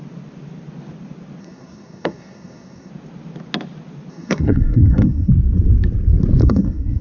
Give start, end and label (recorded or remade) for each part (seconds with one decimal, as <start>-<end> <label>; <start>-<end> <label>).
0.0-1.4 recorded; 1.4-2.9 remade; 2.9-4.1 recorded; 4.1-5.3 remade; 5.3-6.4 recorded; 6.4-7.0 remade